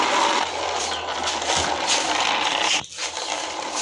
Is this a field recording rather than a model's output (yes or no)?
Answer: yes